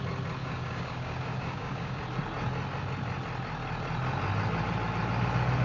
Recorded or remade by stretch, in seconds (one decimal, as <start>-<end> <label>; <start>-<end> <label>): 0.0-0.4 recorded; 0.4-2.0 remade; 2.0-5.6 recorded